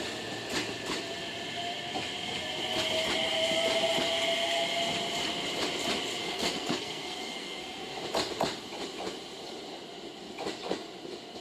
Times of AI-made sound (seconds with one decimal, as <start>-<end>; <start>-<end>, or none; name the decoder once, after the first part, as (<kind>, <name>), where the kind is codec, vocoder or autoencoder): 6.2-8.0 (codec, SNAC)